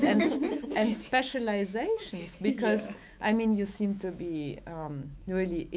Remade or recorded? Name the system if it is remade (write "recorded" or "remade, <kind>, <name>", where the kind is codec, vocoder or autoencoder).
remade, autoencoder, DAC-VAE